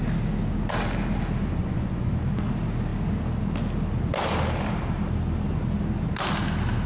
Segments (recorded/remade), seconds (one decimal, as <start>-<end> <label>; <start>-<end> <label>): 0.0-1.6 recorded; 1.6-2.1 remade; 2.1-6.9 recorded

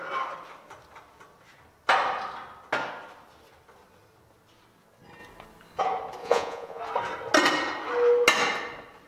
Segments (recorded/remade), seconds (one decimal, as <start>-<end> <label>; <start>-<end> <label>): 0.0-6.2 recorded; 6.2-6.8 remade; 6.8-9.1 recorded

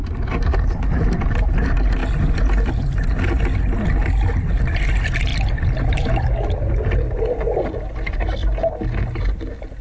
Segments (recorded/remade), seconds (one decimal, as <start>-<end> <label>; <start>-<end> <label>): 0.0-5.3 recorded; 5.3-6.2 remade; 6.2-9.8 recorded

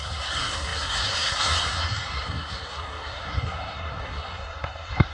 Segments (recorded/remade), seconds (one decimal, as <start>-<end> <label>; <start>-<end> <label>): 0.0-5.1 remade

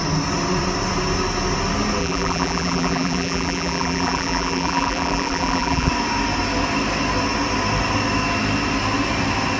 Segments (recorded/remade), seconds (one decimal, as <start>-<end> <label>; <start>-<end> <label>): 0.0-2.0 recorded; 2.0-5.9 remade; 5.9-9.6 recorded

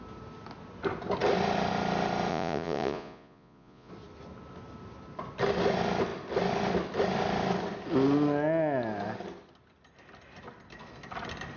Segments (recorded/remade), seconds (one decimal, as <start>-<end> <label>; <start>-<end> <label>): 0.0-2.3 recorded; 2.3-3.9 remade; 3.9-11.6 recorded